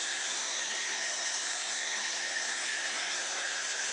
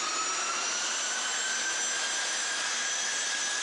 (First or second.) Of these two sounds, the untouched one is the second